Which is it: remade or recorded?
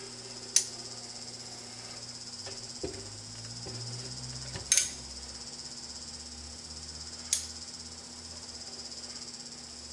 recorded